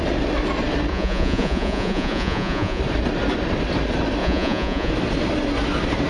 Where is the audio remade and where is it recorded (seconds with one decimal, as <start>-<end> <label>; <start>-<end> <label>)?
0.0-0.9 recorded; 0.9-2.8 remade; 2.8-4.2 recorded; 4.2-4.9 remade; 4.9-6.1 recorded